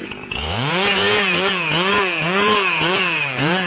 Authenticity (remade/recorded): remade